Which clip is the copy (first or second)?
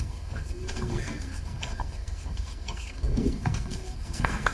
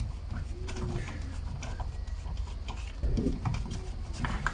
first